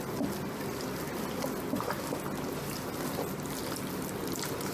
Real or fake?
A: real